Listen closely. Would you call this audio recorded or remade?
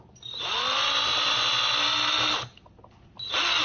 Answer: recorded